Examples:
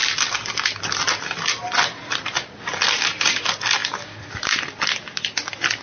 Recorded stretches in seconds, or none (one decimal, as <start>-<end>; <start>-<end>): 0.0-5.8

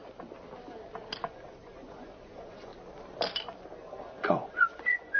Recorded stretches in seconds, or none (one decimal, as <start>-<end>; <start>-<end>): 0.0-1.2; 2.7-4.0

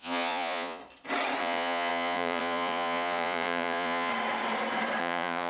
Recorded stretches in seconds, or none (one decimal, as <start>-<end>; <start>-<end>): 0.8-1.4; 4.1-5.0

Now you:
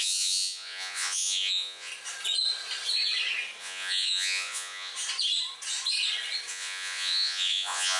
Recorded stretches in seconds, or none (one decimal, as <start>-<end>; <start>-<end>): 1.9-3.6; 4.9-6.5